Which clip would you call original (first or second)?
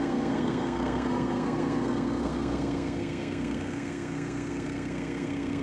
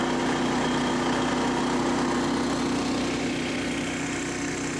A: second